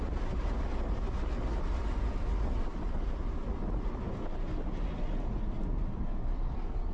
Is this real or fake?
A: real